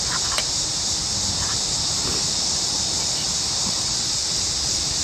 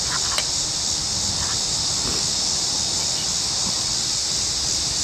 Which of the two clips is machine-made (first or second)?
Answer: first